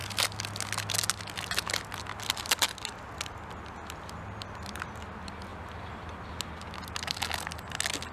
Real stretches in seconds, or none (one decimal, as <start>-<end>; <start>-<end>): 0.0-5.5; 6.3-8.1